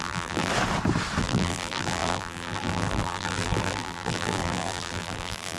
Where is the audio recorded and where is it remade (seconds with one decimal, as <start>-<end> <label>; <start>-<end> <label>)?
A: 0.0-0.5 remade; 0.5-1.2 recorded; 1.2-5.6 remade